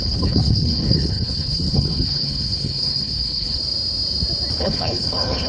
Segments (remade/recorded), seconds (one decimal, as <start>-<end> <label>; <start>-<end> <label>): 0.0-3.6 remade; 3.6-4.6 recorded; 4.6-5.5 remade